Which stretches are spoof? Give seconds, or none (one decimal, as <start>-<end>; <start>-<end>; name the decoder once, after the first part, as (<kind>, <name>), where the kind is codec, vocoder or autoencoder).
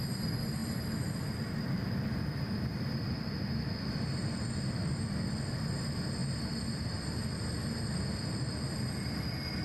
none